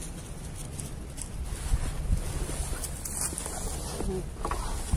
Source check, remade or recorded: recorded